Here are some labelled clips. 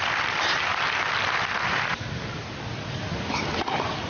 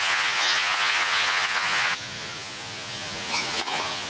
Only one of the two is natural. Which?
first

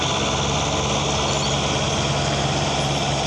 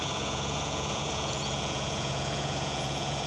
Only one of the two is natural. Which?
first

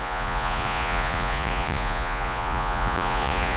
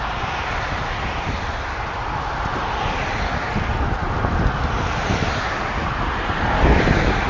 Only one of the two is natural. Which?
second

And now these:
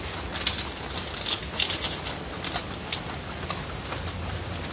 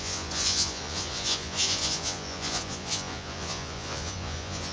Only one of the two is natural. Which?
first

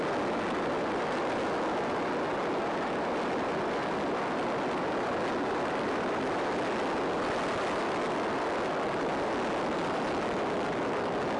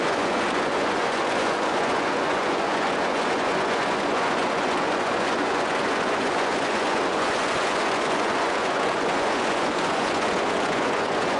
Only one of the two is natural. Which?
first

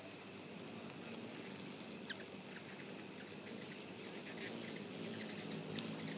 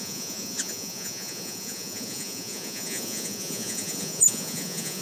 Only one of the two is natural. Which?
first